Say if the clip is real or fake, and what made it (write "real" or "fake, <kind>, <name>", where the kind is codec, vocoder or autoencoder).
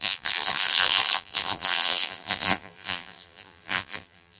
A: fake, vocoder, BigVGAN v2